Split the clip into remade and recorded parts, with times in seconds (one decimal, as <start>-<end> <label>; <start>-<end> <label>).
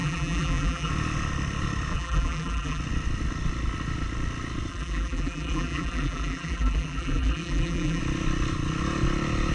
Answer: 0.0-0.9 remade; 0.9-1.9 recorded; 1.9-2.8 remade; 2.8-4.7 recorded; 4.7-8.0 remade; 8.0-9.5 recorded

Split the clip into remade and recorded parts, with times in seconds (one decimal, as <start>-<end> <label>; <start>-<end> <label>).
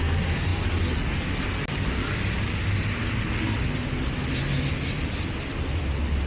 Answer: 0.0-6.3 recorded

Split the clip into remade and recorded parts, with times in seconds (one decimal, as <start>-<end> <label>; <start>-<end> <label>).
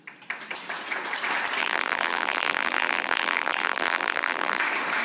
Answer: 0.0-1.6 recorded; 1.6-4.6 remade; 4.6-5.0 recorded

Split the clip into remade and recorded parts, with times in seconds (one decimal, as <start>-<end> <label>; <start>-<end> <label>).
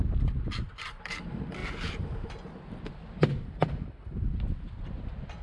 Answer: 0.0-5.4 recorded